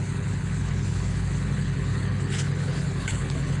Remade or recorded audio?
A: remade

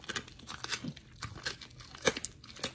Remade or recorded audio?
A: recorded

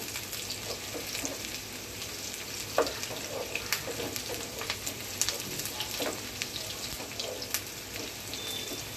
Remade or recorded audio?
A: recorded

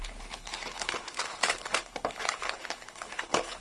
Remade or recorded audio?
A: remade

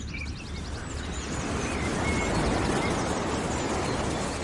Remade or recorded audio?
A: recorded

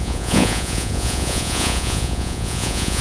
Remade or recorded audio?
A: remade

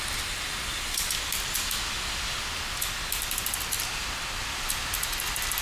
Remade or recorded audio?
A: recorded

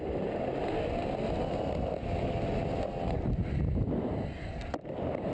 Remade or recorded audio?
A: recorded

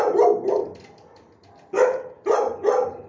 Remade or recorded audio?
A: recorded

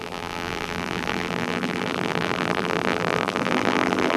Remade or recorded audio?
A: remade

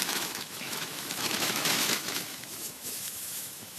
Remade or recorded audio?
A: remade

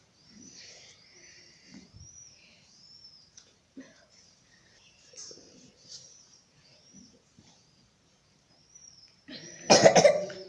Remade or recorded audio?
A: remade